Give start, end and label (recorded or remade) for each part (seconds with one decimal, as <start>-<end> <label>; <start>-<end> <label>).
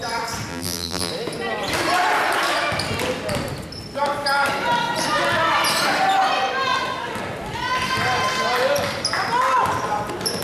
0.0-0.5 recorded; 0.5-1.1 remade; 1.1-10.4 recorded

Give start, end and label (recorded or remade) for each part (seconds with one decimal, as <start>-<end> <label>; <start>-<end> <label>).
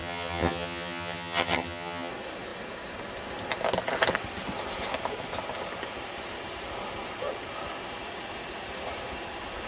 0.0-2.1 remade; 2.1-9.7 recorded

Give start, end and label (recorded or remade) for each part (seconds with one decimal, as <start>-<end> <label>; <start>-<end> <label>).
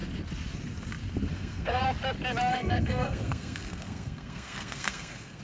0.0-1.3 recorded; 1.3-1.8 remade; 1.8-2.5 recorded; 2.5-5.4 remade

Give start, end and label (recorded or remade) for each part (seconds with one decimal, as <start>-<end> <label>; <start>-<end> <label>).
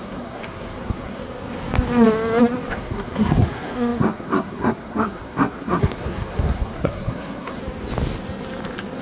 0.0-1.2 remade; 1.2-2.7 recorded; 2.7-7.6 remade; 7.6-9.0 recorded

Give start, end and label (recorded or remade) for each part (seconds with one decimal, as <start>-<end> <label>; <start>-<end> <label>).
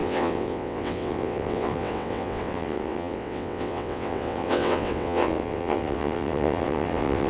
0.0-7.3 remade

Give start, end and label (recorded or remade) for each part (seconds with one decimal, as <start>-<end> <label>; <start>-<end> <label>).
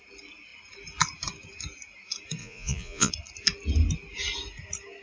0.0-2.4 recorded; 2.4-3.1 remade; 3.1-5.0 recorded